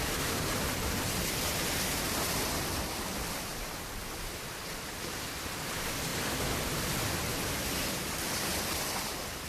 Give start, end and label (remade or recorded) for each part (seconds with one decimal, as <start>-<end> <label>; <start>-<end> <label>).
0.0-3.5 remade; 3.5-5.0 recorded; 5.0-9.5 remade